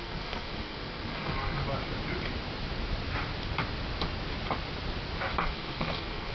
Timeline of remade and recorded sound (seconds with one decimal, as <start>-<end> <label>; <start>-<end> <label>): 0.0-1.6 remade; 1.6-5.4 recorded; 5.4-6.3 remade